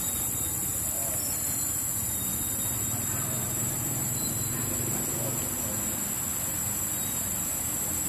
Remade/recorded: recorded